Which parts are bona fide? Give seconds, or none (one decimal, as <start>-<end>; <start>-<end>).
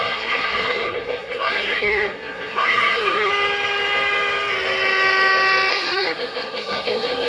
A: 3.3-5.7